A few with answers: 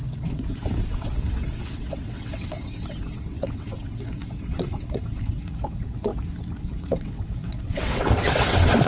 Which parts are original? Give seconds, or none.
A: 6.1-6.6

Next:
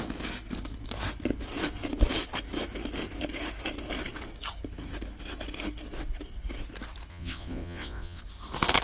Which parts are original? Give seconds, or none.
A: 0.0-7.1; 8.2-8.8